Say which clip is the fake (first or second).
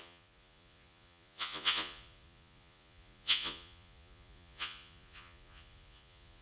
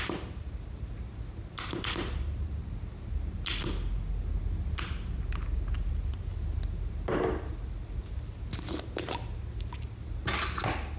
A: first